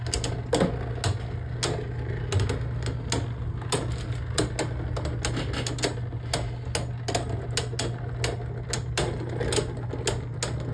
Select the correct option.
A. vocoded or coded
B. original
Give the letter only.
B